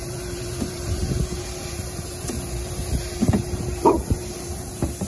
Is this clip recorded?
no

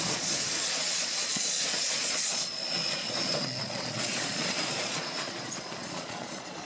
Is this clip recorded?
no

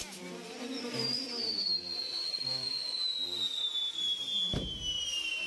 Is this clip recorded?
yes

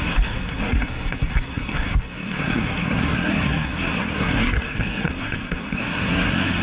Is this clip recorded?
no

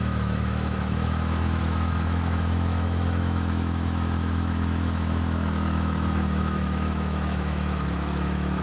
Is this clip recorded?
no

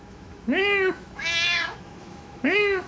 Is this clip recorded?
no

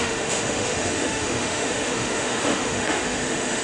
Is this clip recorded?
no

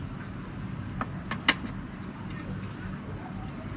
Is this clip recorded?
yes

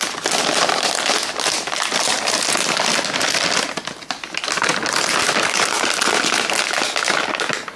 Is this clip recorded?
yes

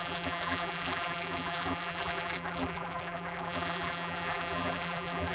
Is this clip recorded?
no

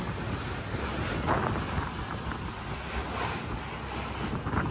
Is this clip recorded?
yes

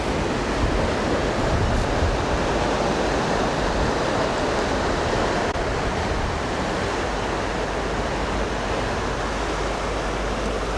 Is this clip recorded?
yes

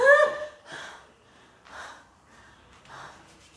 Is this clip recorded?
no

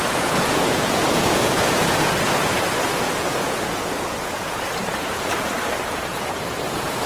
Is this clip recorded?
no